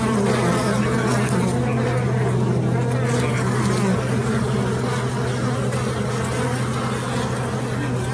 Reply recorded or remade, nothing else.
recorded